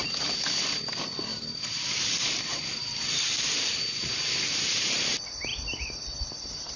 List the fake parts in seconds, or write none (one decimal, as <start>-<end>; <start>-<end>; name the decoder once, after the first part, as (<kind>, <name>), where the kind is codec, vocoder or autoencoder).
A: 1.3-3.5 (vocoder, BigVGAN v2); 5.5-6.8